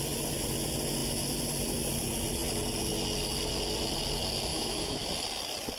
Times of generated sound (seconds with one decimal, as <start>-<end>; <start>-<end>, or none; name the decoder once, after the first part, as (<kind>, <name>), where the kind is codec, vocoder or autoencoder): 4.5-5.1 (autoencoder, DAC-VAE)